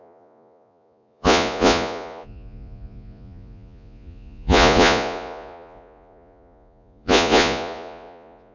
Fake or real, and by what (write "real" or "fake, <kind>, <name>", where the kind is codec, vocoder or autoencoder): fake, vocoder, Vocos